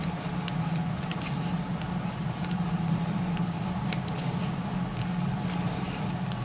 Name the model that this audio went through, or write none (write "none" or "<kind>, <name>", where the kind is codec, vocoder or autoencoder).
none